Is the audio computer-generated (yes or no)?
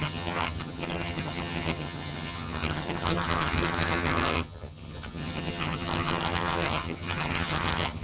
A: yes